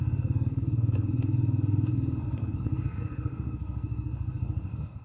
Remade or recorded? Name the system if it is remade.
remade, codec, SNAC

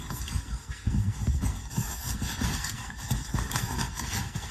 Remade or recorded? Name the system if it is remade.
remade, codec, SNAC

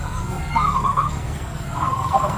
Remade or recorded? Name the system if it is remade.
remade, codec, SNAC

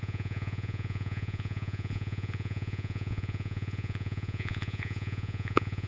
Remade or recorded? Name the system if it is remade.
remade, vocoder, Vocos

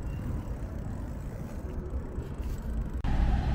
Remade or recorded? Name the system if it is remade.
remade, vocoder, BigVGAN v2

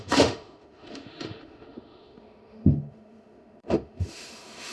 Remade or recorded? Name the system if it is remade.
remade, autoencoder, DAC-VAE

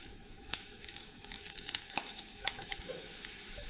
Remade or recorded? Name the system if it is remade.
remade, autoencoder, DAC-VAE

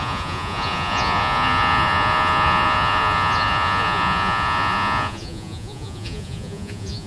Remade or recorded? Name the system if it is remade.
remade, vocoder, Vocos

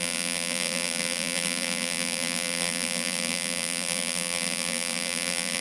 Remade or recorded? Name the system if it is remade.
remade, vocoder, BigVGAN v2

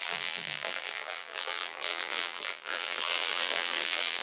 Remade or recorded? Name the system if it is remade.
remade, vocoder, BigVGAN v2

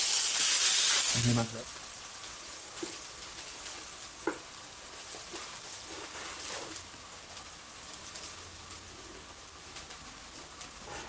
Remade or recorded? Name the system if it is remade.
recorded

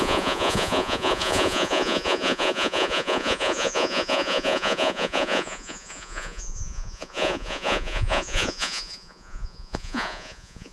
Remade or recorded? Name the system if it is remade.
remade, vocoder, Vocos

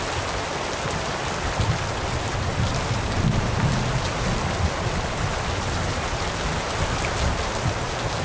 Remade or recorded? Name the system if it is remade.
recorded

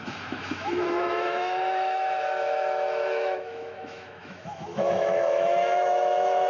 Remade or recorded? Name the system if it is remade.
remade, autoencoder, DAC-VAE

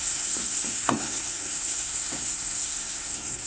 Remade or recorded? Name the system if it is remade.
remade, codec, SNAC